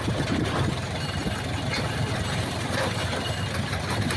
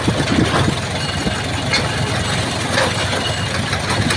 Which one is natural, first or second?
second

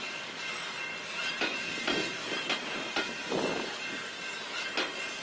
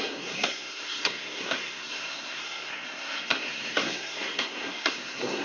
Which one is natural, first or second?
first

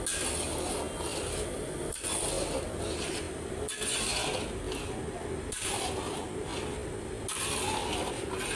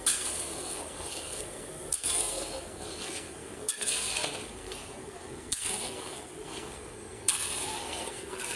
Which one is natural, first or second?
first